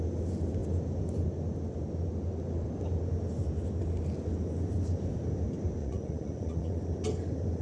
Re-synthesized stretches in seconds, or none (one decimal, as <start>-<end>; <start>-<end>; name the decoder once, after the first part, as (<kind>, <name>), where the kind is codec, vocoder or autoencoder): 5.8-6.8 (vocoder, Vocos)